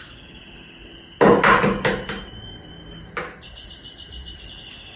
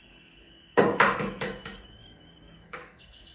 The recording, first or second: first